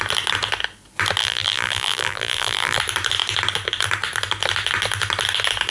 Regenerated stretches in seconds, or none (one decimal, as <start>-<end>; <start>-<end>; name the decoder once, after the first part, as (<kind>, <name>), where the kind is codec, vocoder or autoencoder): 1.2-2.8 (vocoder, BigVGAN v2)